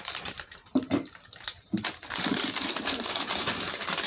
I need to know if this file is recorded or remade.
remade